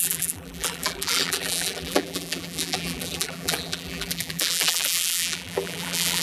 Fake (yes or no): yes